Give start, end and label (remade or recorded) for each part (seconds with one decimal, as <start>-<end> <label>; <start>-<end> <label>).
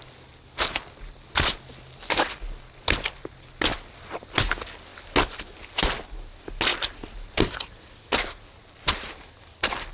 0.0-9.9 recorded